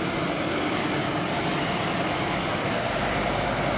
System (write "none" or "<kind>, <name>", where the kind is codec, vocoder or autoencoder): none